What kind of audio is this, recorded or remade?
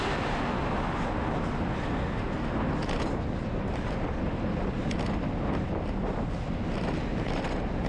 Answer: recorded